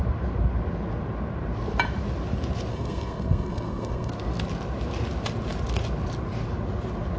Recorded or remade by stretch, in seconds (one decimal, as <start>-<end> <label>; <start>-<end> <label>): 0.0-2.7 recorded; 2.7-4.1 remade; 4.1-7.2 recorded